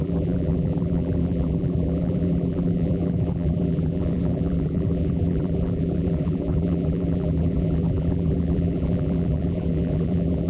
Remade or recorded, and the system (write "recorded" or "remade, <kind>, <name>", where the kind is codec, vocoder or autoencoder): remade, vocoder, BigVGAN v2